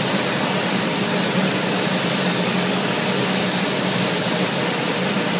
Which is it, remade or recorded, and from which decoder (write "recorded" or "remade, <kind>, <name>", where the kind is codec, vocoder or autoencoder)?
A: recorded